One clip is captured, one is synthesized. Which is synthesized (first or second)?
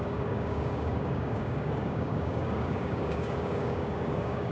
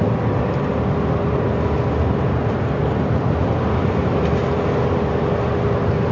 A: first